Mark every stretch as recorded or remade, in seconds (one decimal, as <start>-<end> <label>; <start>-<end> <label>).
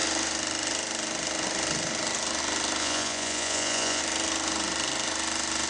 0.0-2.8 recorded; 2.8-4.0 remade; 4.0-5.7 recorded